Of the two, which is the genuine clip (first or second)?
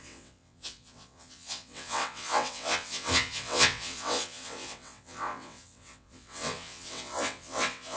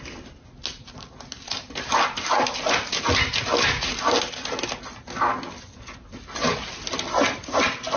second